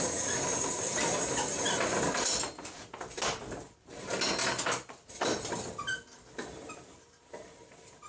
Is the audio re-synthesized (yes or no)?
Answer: no